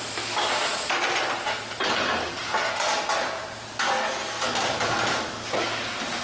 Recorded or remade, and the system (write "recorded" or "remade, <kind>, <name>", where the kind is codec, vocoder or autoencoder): recorded